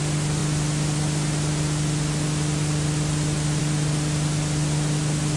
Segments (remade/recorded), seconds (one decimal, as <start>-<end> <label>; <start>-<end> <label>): 0.0-5.4 recorded